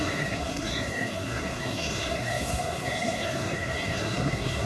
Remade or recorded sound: remade